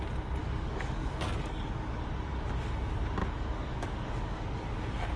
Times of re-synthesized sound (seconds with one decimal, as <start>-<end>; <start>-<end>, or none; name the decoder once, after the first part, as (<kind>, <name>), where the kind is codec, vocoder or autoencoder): 0.4-2.0 (codec, DAC); 3.2-4.8